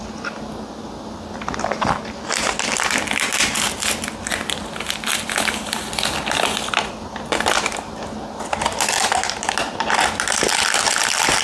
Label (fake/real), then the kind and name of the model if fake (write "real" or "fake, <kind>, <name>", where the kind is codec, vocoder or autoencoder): real